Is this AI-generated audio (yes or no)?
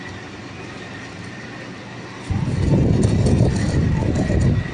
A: no